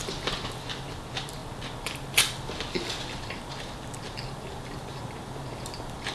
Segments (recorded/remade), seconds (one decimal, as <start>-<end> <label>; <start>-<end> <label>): 0.0-6.1 recorded